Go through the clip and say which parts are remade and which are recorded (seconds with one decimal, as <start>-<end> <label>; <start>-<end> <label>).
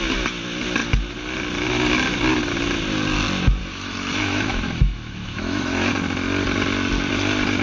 0.0-3.6 recorded; 3.6-5.9 remade; 5.9-7.6 recorded